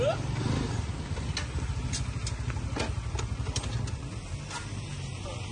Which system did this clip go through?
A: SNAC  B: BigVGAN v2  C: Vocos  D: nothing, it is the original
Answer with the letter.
D